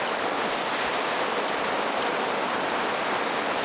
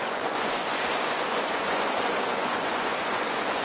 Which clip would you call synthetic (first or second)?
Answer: second